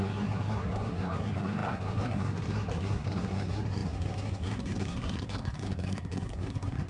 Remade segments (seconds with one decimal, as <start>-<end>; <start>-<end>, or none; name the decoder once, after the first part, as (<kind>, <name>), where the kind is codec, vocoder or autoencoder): 0.0-6.9 (codec, SNAC)